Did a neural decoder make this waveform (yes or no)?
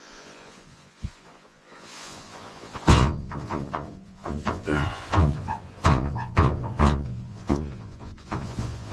yes